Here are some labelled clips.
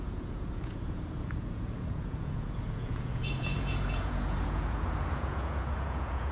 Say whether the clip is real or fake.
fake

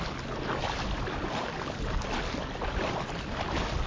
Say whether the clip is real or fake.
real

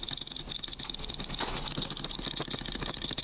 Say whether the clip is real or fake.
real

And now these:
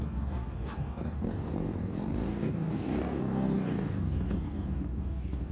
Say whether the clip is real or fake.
fake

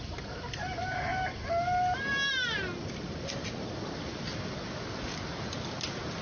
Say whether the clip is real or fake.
real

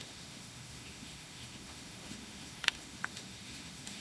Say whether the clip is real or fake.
fake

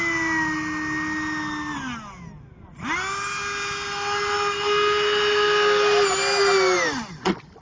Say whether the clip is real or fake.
real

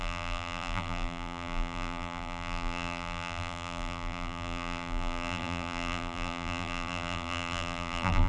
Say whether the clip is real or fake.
fake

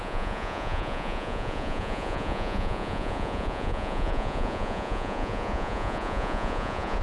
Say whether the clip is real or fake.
fake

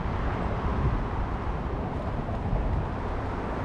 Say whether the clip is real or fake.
real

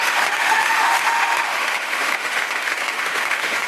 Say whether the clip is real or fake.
fake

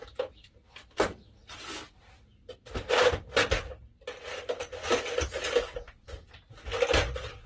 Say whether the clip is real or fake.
real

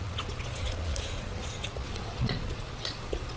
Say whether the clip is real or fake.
fake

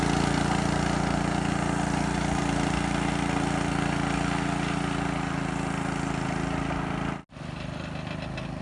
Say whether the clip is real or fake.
real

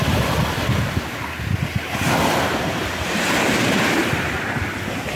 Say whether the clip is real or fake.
real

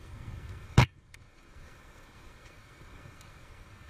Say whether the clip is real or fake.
fake